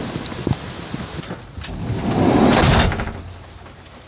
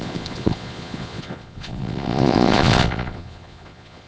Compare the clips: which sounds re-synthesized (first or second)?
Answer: second